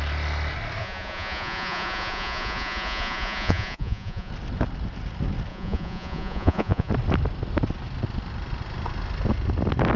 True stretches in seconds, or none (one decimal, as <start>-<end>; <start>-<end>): 0.0-0.8; 4.3-5.5; 6.9-10.0

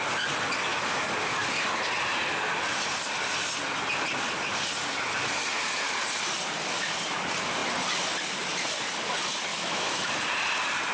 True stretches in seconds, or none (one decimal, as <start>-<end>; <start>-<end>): 0.0-9.5; 10.1-10.9

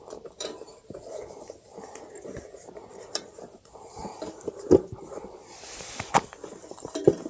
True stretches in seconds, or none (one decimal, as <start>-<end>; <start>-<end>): 0.7-2.4